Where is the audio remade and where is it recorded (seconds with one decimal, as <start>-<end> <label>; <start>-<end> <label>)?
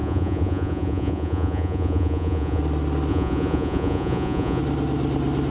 0.0-2.6 remade; 2.6-3.1 recorded; 3.1-4.6 remade; 4.6-5.5 recorded